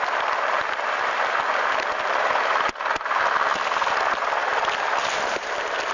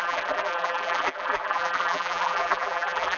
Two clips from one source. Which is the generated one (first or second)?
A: second